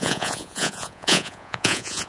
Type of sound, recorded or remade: remade